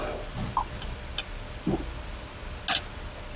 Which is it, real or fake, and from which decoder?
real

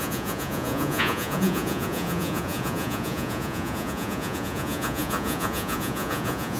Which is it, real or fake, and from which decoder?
fake, vocoder, Vocos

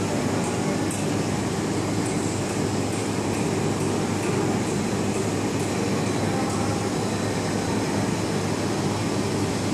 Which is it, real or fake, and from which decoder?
real